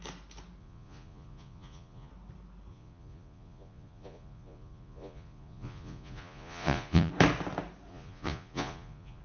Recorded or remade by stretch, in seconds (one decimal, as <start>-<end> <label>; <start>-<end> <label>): 0.0-0.6 recorded; 0.6-2.1 remade; 2.1-2.7 recorded; 2.7-7.1 remade; 7.1-7.9 recorded; 7.9-9.2 remade